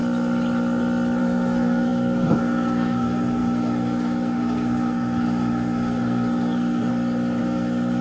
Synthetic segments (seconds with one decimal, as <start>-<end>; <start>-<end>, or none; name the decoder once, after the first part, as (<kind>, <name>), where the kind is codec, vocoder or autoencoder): 1.2-6.9 (codec, SNAC); 7.4-8.0